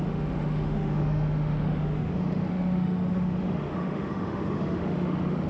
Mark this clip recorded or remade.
remade